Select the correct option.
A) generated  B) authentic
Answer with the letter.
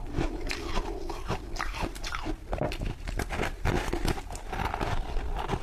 B